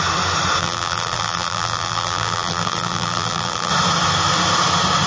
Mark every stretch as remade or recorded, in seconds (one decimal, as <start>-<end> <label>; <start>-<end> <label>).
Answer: 0.0-0.6 recorded; 0.6-3.7 remade; 3.7-5.1 recorded